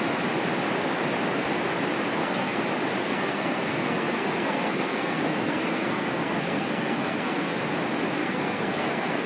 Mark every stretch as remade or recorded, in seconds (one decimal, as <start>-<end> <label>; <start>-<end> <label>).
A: 0.0-2.1 recorded; 2.1-2.6 remade; 2.6-3.0 recorded; 3.0-7.6 remade; 7.6-8.2 recorded; 8.2-9.3 remade

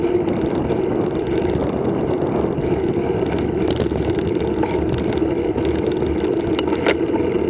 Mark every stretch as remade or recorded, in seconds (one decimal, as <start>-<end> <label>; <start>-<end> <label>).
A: 0.0-7.5 recorded

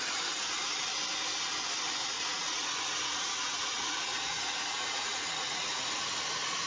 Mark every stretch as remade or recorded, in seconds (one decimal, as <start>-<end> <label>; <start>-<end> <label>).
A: 0.0-2.0 recorded; 2.0-6.0 remade; 6.0-6.7 recorded